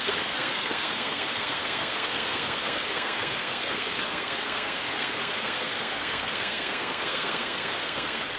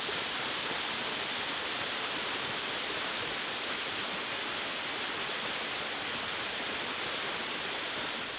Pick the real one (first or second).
second